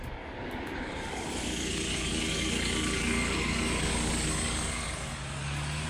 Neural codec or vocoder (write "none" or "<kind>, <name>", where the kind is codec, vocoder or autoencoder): codec, DAC